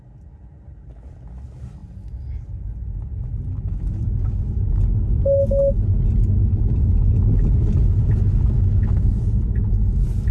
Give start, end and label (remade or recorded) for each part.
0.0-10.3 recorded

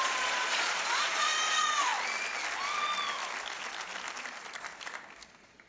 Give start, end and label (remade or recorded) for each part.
0.0-1.9 remade; 1.9-5.3 recorded; 5.3-5.7 remade

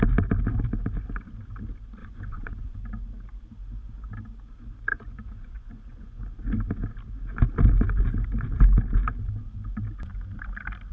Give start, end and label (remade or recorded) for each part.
0.0-2.0 recorded; 2.0-2.8 remade; 2.8-4.9 recorded; 4.9-6.2 remade; 6.2-10.9 recorded

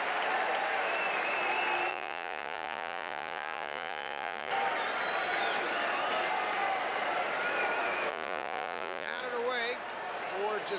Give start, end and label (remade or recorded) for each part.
0.0-1.9 recorded; 1.9-4.5 remade; 4.5-8.1 recorded; 8.1-9.2 remade; 9.2-10.8 recorded

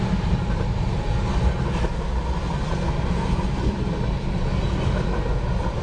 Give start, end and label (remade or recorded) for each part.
0.0-5.8 recorded

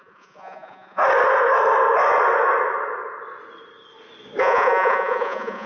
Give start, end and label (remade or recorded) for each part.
0.0-1.0 remade; 1.0-4.4 recorded; 4.4-5.7 remade

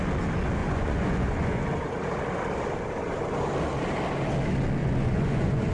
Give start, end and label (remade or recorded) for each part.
0.0-0.6 recorded; 0.6-1.6 remade; 1.6-4.8 recorded; 4.8-5.7 remade

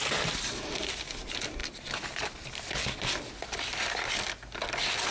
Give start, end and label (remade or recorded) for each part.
0.0-5.1 recorded